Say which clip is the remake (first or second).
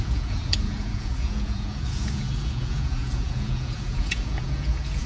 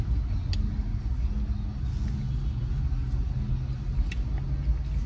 first